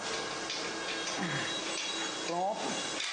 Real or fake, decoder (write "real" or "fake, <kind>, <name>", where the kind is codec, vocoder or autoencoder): real